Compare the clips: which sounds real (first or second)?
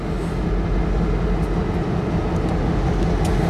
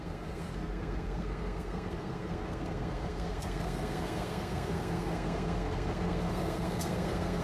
first